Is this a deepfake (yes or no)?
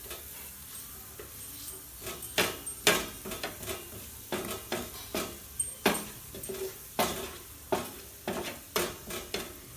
no